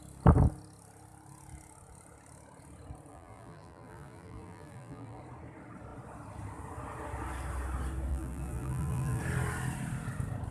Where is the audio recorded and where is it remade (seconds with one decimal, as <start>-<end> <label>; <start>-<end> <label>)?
0.0-3.1 recorded; 3.1-5.2 remade; 5.2-8.1 recorded; 8.1-9.2 remade; 9.2-10.5 recorded